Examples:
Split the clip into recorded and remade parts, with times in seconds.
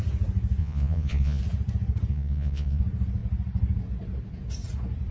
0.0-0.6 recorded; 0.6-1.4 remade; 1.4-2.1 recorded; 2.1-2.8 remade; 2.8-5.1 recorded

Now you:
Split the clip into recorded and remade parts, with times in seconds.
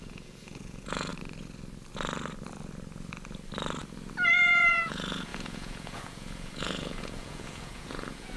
0.0-1.1 remade; 1.1-4.3 recorded; 4.3-8.4 remade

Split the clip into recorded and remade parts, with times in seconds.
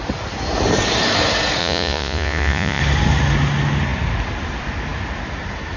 0.0-1.6 recorded; 1.6-2.8 remade; 2.8-5.8 recorded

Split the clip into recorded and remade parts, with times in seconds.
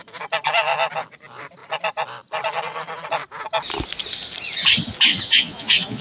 0.0-5.1 recorded; 5.1-6.0 remade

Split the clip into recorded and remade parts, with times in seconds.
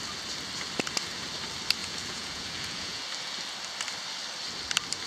0.0-1.8 recorded; 1.8-3.0 remade; 3.0-5.1 recorded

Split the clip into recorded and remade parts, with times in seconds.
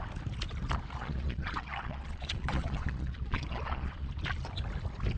0.0-1.0 recorded; 1.0-4.1 remade; 4.1-5.2 recorded